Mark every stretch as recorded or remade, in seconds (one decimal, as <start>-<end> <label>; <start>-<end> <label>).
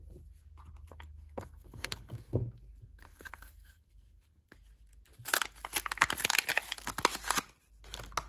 0.0-0.9 recorded; 0.9-4.5 remade; 4.5-8.3 recorded